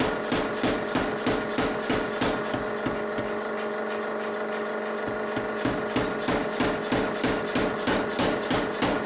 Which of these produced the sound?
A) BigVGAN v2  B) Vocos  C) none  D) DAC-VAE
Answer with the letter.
C